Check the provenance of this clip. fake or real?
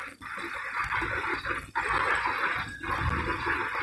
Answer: real